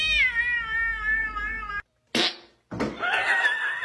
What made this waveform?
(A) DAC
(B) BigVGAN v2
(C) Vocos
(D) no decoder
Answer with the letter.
D